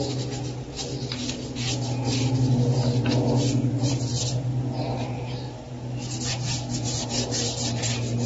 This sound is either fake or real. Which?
real